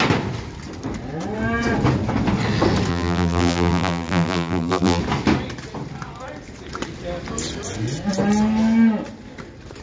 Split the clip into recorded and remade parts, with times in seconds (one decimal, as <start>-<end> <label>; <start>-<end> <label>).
0.0-2.9 recorded; 2.9-5.0 remade; 5.0-9.8 recorded

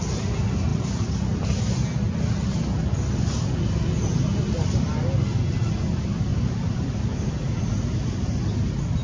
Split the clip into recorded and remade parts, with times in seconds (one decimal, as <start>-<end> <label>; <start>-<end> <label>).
0.0-0.7 recorded; 0.7-1.6 remade; 1.6-6.3 recorded; 6.3-8.3 remade; 8.3-9.0 recorded

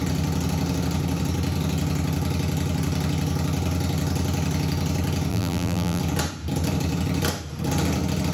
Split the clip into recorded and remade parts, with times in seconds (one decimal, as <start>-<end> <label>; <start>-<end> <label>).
0.0-5.3 recorded; 5.3-6.0 remade; 6.0-8.3 recorded

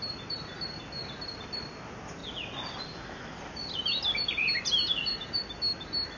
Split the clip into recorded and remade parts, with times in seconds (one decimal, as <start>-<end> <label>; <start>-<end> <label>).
0.0-6.2 recorded